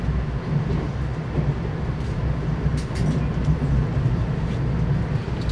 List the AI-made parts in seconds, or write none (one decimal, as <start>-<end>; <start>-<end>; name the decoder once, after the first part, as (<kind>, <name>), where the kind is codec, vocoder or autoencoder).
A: none